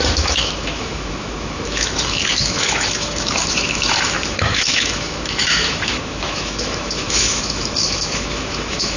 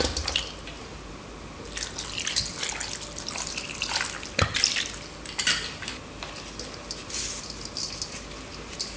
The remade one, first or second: first